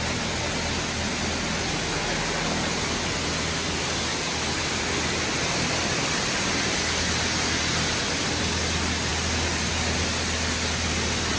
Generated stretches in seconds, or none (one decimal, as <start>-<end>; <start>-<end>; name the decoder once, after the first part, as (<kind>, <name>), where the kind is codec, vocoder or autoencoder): none